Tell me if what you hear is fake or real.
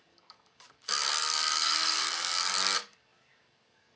fake